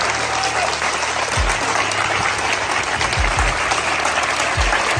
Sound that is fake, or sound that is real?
real